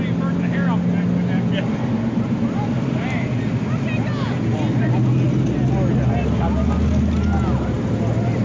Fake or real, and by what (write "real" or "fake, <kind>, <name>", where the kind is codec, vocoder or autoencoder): real